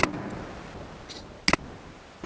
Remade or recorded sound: recorded